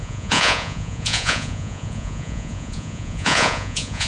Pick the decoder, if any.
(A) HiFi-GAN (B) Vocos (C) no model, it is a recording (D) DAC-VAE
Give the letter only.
B